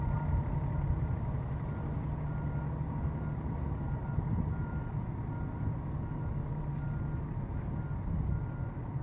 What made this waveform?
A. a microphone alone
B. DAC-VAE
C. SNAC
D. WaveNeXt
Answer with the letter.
A